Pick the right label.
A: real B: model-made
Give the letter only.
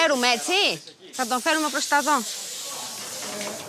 A